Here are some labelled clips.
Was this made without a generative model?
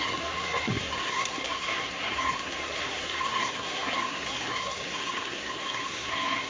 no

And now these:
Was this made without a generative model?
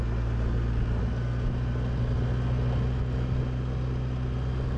yes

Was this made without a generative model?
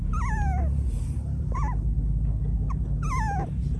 yes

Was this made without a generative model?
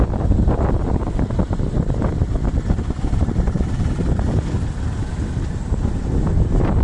yes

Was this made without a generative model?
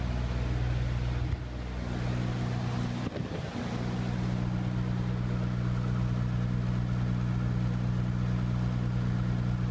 yes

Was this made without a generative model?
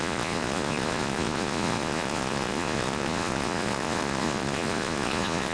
no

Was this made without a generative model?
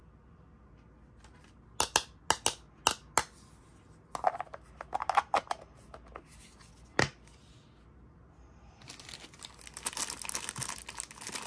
yes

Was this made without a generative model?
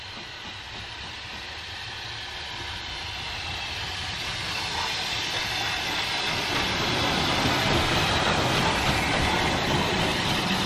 yes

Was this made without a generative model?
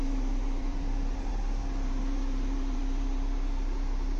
no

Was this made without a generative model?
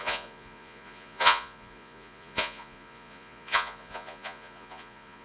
no